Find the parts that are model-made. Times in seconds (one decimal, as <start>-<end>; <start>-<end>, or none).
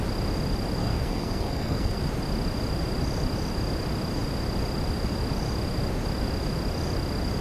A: 0.8-2.0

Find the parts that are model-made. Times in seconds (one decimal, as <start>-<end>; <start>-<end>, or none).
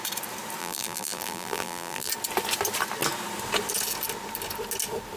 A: 0.6-2.1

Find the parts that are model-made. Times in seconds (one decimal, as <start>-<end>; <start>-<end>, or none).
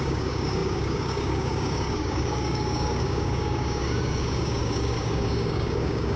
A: 0.0-6.2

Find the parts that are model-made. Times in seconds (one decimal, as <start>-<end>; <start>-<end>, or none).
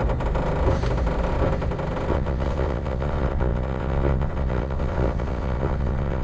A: 2.1-6.2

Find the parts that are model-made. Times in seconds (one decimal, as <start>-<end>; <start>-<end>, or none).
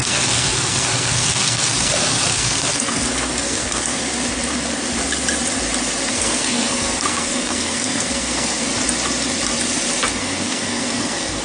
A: 0.0-4.0; 6.1-8.7; 10.2-11.4